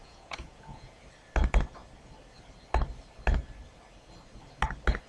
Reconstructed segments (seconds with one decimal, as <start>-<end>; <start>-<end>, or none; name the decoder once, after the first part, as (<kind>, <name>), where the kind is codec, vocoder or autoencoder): 0.0-1.0 (vocoder, Vocos)